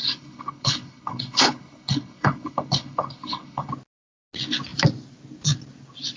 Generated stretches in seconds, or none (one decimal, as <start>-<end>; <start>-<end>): 0.0-3.7

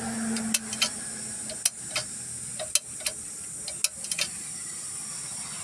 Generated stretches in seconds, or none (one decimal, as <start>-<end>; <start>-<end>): none

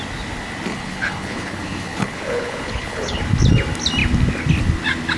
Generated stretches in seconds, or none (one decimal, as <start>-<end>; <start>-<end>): 0.7-3.2